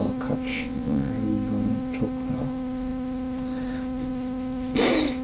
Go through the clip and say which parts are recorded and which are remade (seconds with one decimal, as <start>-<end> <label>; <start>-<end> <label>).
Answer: 0.0-0.5 recorded; 0.5-1.1 remade; 1.1-5.2 recorded